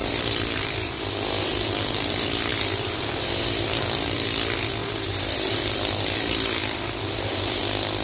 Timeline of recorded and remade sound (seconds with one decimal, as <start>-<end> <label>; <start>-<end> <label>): 0.0-1.1 remade; 1.1-2.5 recorded; 2.5-3.2 remade; 3.2-4.8 recorded; 4.8-7.6 remade; 7.6-8.0 recorded